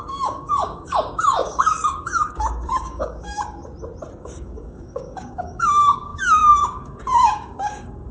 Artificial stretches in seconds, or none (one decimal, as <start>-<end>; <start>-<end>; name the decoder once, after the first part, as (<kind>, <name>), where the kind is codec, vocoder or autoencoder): 0.0-3.6 (codec, DAC); 4.2-8.1